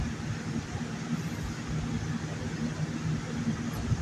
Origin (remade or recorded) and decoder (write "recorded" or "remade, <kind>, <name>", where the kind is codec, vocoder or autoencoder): recorded